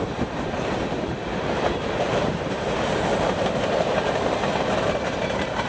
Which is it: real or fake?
fake